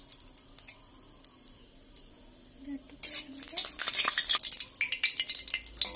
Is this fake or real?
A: real